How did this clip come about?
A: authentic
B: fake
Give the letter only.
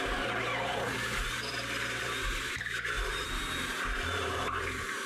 B